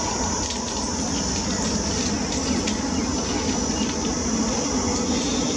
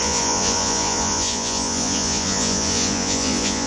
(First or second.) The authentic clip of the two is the first